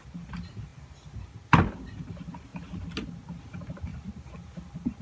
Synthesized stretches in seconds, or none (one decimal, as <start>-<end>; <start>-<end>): none